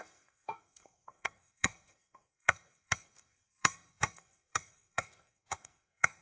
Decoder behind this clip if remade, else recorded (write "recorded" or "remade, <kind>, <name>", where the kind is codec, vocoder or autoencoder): remade, codec, SNAC